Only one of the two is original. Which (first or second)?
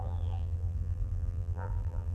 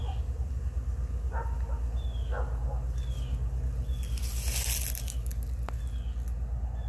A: second